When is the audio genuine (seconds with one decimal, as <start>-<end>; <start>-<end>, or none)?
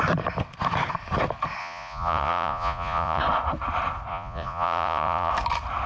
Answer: 0.0-1.6; 3.2-4.1; 5.3-5.9